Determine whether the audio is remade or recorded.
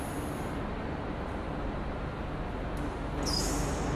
recorded